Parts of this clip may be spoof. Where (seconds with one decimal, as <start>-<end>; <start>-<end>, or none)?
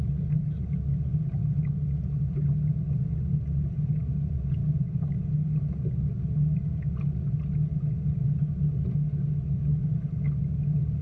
none